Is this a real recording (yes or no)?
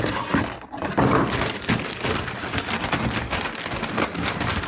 yes